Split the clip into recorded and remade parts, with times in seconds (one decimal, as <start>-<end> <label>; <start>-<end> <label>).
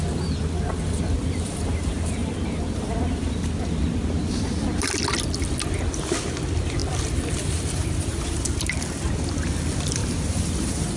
0.0-6.8 recorded; 6.8-9.0 remade; 9.0-10.0 recorded; 10.0-11.0 remade